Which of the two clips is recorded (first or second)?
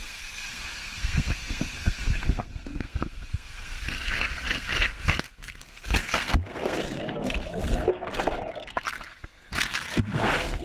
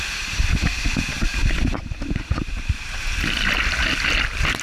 second